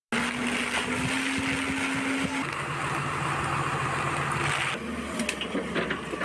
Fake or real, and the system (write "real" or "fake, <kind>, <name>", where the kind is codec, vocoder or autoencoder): real